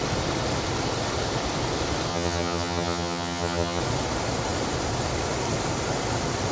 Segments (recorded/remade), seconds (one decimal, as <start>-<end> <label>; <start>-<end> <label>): 0.0-2.1 recorded; 2.1-3.8 remade; 3.8-6.5 recorded